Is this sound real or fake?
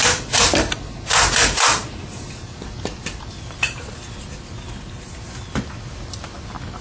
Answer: real